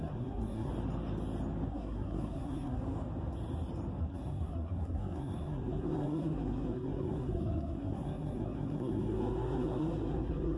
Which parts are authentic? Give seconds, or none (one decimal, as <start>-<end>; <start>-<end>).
0.7-1.7; 2.8-4.0